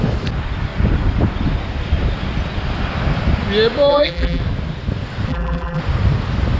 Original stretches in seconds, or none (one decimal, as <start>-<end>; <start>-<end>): 0.0-3.9; 4.4-5.3; 5.8-6.6